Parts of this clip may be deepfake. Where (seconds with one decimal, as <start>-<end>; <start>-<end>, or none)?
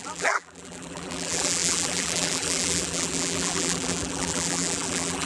0.0-5.3